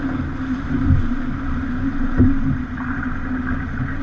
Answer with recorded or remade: recorded